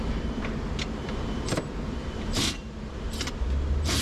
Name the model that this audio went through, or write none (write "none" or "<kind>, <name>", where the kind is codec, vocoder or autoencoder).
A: vocoder, BigVGAN v2